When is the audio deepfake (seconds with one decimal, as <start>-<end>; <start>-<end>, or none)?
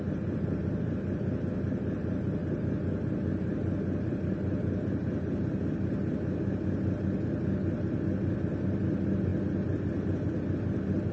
none